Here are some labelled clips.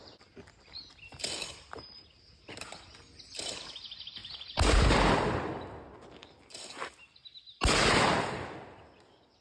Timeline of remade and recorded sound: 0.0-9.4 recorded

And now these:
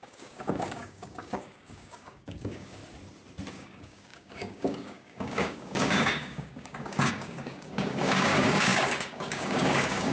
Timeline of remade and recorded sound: 0.0-2.8 remade; 2.8-3.5 recorded; 3.5-10.1 remade